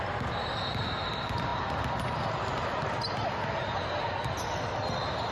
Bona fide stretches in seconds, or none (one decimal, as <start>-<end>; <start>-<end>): 0.0-5.3